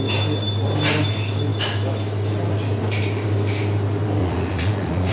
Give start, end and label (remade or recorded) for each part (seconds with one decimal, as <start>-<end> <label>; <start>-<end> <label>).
0.0-4.2 recorded; 4.2-5.1 remade